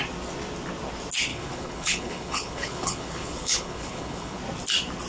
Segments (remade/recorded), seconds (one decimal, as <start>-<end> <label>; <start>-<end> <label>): 0.0-1.3 recorded; 1.3-4.4 remade; 4.4-5.1 recorded